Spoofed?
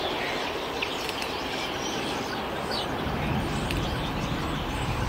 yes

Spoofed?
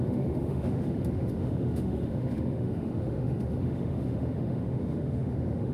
yes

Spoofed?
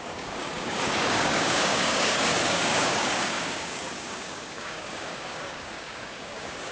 yes